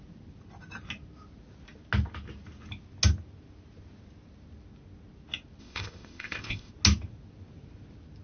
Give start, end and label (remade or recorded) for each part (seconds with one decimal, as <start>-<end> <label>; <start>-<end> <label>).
0.0-5.6 recorded; 5.6-6.7 remade; 6.7-8.2 recorded